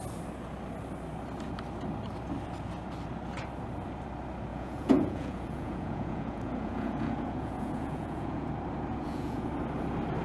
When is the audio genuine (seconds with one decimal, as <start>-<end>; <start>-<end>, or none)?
0.0-4.5; 8.5-8.9; 9.5-10.2